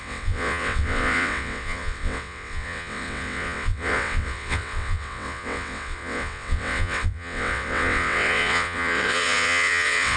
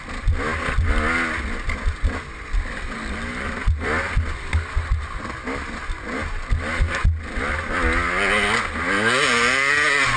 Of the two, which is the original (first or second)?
second